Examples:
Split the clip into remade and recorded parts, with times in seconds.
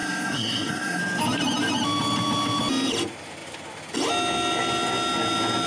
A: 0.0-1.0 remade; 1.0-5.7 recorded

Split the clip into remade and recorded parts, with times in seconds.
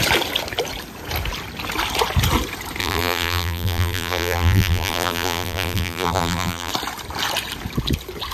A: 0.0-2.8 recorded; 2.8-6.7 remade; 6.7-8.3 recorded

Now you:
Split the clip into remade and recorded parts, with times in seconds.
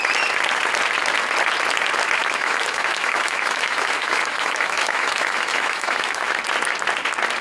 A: 0.0-2.2 recorded; 2.2-6.4 remade; 6.4-7.4 recorded